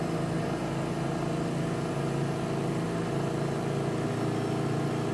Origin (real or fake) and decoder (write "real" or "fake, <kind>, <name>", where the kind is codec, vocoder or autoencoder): real